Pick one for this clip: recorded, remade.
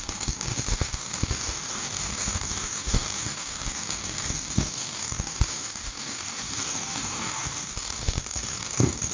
remade